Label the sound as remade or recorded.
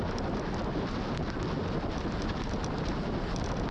recorded